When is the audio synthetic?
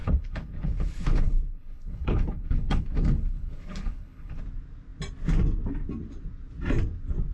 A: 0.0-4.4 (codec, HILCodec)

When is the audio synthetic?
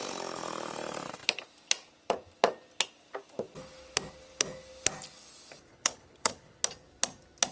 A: 5.7-6.6 (codec, HILCodec)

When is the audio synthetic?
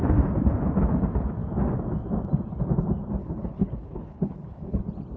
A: 3.2-4.8 (codec, HILCodec)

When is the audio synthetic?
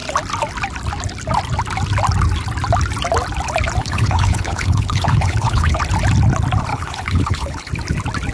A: 3.8-5.8 (codec, HILCodec); 6.7-7.7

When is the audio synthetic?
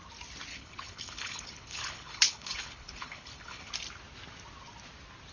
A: 0.5-3.7 (codec, HILCodec)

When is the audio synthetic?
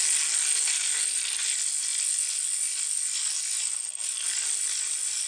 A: none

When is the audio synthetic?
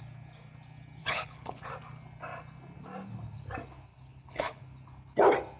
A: 1.0-1.7 (codec, HILCodec); 3.9-4.6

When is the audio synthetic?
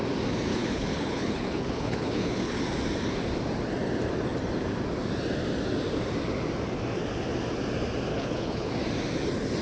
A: 0.5-2.6 (codec, HILCodec); 8.1-8.7